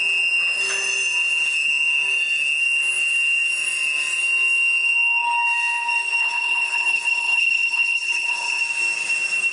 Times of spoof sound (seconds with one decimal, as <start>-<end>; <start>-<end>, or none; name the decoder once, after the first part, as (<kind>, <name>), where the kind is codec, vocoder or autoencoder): 6.2-8.6 (codec, HILCodec)